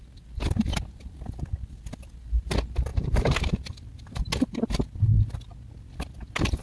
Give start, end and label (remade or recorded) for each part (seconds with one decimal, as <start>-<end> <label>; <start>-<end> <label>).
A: 0.0-6.6 recorded